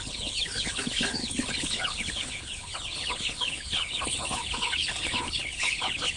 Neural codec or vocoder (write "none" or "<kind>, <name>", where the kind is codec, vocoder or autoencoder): codec, HILCodec